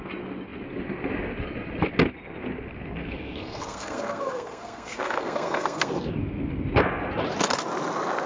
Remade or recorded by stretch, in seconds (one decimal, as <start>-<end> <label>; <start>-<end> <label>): 0.0-3.0 recorded; 3.0-6.1 remade; 6.1-8.3 recorded